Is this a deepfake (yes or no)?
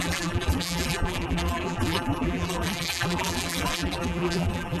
yes